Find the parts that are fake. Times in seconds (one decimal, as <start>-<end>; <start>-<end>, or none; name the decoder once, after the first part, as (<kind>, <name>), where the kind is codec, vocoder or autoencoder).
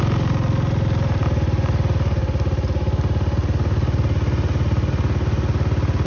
none